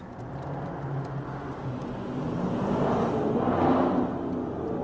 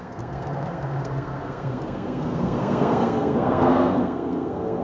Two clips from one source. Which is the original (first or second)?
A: first